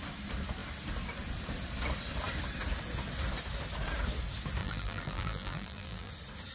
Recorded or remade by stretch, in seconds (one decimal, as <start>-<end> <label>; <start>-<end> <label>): 0.0-4.6 recorded; 4.6-6.1 remade; 6.1-6.5 recorded